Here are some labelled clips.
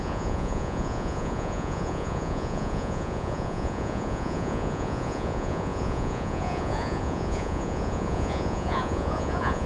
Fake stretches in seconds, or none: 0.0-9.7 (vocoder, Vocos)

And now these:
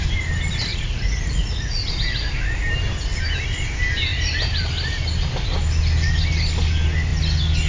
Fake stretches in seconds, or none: 0.7-1.9 (vocoder, Vocos)

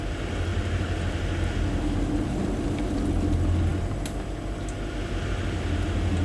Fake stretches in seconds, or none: none

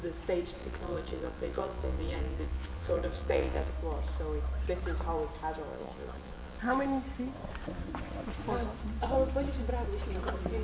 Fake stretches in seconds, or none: 0.6-3.7 (vocoder, Vocos); 5.7-6.6

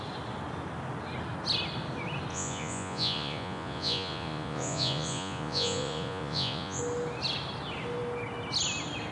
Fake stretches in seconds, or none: 2.3-6.8 (vocoder, Vocos)

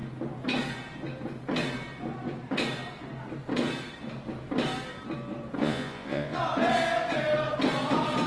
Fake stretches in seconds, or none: 5.6-6.4 (vocoder, Vocos)

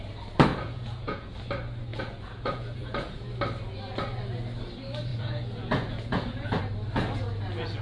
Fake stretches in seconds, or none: 0.5-1.3 (vocoder, Vocos); 1.9-3.3; 5.1-6.6

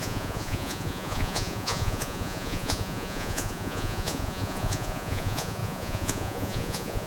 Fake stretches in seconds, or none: 0.0-7.1 (vocoder, Vocos)